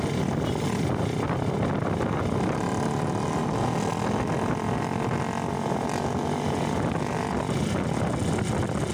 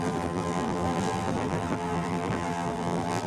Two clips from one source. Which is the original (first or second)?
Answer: first